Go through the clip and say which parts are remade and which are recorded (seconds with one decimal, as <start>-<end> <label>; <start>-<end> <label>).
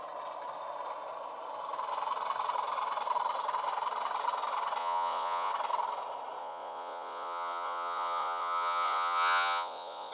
0.0-4.8 recorded; 4.8-5.5 remade; 5.5-6.4 recorded; 6.4-10.1 remade